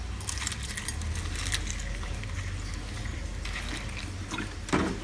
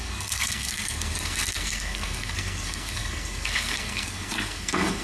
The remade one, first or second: second